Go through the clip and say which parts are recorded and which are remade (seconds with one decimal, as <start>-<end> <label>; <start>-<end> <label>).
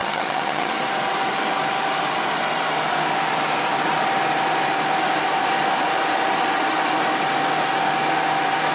0.0-0.7 remade; 0.7-8.7 recorded